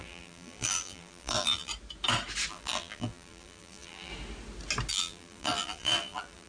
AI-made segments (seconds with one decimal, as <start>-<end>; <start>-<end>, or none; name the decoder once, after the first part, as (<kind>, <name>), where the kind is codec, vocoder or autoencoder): 0.0-1.7 (vocoder, BigVGAN v2); 2.5-4.1; 4.9-6.5